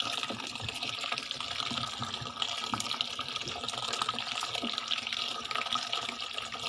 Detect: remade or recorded recorded